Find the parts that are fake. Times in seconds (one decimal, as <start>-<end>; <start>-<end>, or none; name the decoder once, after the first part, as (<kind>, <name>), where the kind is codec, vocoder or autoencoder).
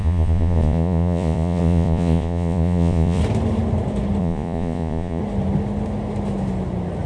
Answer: 0.0-3.2 (vocoder, Vocos); 4.2-5.2